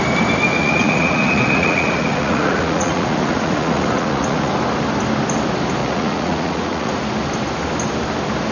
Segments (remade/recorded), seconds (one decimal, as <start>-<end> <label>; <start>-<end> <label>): 0.0-0.6 recorded; 0.6-4.5 remade; 4.5-5.8 recorded; 5.8-6.9 remade; 6.9-8.5 recorded